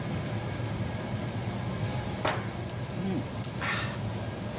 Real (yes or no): yes